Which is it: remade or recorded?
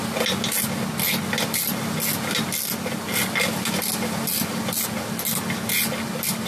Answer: recorded